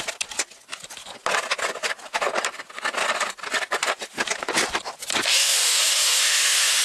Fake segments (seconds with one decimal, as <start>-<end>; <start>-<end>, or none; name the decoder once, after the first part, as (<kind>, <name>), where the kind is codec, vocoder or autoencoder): 5.3-6.8 (autoencoder, DAC-VAE)